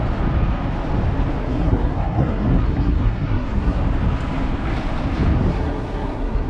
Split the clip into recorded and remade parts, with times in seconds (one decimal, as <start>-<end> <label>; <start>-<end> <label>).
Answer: 0.0-1.4 recorded; 1.4-3.8 remade; 3.8-5.5 recorded; 5.5-6.5 remade